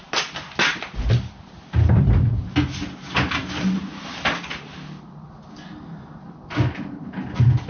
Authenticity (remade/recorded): recorded